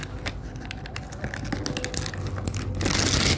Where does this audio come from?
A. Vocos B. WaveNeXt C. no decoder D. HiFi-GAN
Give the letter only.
C